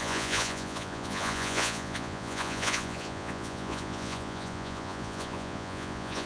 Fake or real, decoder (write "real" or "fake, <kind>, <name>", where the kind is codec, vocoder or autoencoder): fake, vocoder, Vocos